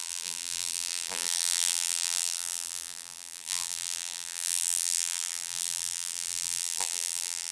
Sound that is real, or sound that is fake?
fake